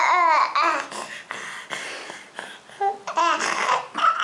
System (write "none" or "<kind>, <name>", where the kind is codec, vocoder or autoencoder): none